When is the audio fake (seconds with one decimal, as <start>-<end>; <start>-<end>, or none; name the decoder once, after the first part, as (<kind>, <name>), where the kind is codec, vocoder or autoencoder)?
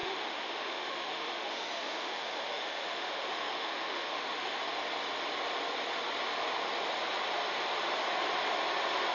0.0-4.6 (autoencoder, DAC-VAE)